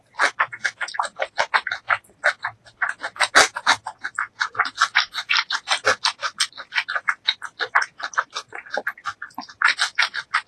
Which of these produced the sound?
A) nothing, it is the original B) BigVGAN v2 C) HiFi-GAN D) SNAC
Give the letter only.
A